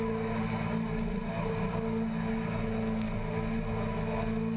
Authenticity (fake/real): real